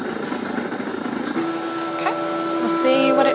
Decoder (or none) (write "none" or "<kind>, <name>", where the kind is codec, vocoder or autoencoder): none